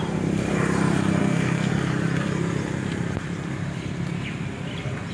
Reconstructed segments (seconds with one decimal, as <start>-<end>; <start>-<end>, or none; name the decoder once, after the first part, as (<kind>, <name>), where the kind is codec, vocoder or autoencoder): 1.2-1.7 (codec, SNAC)